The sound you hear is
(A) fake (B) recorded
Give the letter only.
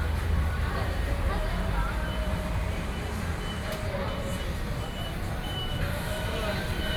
A